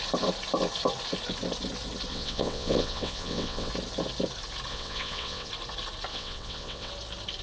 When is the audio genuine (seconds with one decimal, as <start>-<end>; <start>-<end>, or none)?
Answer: 0.0-2.1; 3.7-4.7; 5.5-6.1; 6.9-7.4